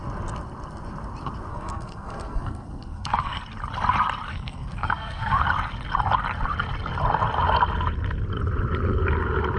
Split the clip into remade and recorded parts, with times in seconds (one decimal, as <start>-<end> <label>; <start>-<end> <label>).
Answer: 0.0-1.5 recorded; 1.5-3.4 remade; 3.4-4.3 recorded; 4.3-5.4 remade; 5.4-9.6 recorded

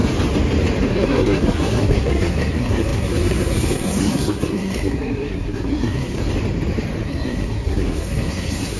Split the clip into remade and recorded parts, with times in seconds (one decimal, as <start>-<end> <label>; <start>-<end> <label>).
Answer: 0.0-0.9 recorded; 0.9-6.2 remade; 6.2-7.0 recorded; 7.0-8.8 remade

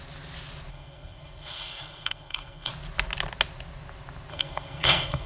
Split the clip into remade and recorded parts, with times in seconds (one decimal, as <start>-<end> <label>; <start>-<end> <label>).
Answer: 0.0-0.7 recorded; 0.7-2.7 remade; 2.7-4.3 recorded; 4.3-5.3 remade